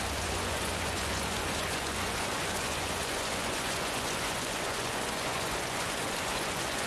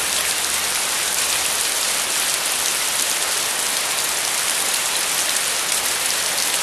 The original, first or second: second